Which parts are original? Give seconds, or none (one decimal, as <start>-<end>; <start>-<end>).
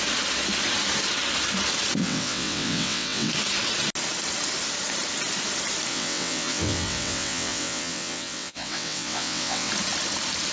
0.0-2.0; 3.3-5.9; 9.7-10.5